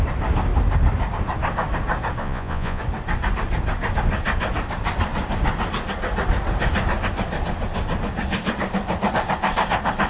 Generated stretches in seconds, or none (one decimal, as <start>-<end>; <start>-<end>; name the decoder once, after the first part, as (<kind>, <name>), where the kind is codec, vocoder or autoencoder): 2.2-2.8 (vocoder, Vocos)